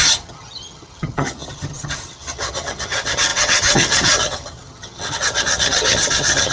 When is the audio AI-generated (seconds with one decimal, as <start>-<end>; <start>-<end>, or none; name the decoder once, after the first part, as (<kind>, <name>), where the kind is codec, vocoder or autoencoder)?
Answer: 0.0-6.5 (vocoder, HiFi-GAN)